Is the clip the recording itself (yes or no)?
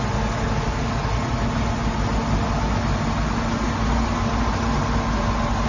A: yes